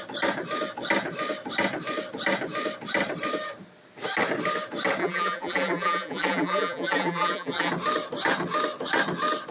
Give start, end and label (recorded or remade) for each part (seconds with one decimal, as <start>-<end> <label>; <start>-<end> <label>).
0.0-5.0 recorded; 5.0-7.7 remade; 7.7-9.5 recorded